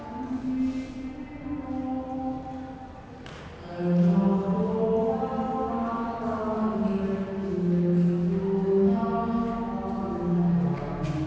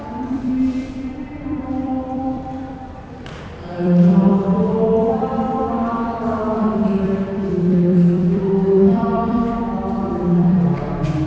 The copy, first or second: second